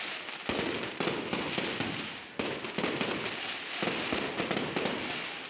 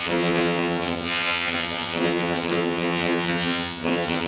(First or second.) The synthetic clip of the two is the second